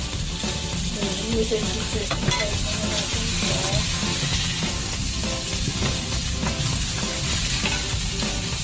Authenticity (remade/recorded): recorded